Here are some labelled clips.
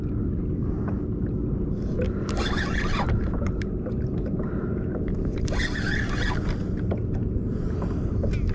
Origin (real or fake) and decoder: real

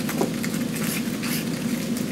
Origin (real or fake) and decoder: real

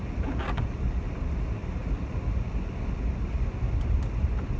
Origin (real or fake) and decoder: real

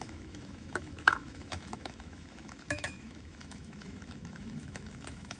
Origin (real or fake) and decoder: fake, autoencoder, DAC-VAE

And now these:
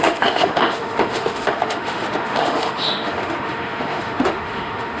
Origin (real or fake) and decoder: fake, autoencoder, DAC-VAE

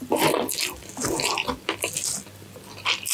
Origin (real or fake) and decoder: real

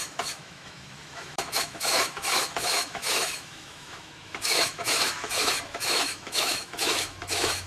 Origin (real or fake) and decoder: fake, autoencoder, DAC-VAE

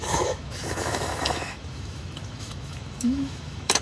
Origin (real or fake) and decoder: fake, autoencoder, DAC-VAE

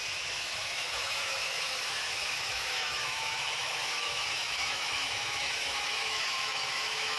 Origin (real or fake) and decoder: fake, autoencoder, DAC-VAE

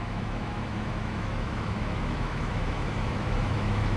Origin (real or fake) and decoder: fake, autoencoder, DAC-VAE